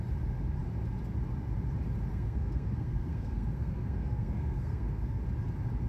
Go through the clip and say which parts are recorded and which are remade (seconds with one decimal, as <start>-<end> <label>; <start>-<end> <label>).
0.0-2.1 recorded; 2.1-5.2 remade; 5.2-5.9 recorded